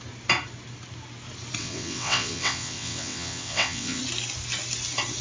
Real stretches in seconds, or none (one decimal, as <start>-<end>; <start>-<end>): 0.0-1.6; 4.0-5.2